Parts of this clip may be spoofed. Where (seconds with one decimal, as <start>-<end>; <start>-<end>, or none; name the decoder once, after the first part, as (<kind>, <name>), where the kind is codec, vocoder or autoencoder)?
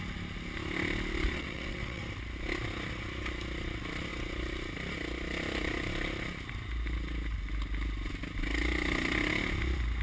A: 1.3-2.0 (vocoder, WaveNeXt)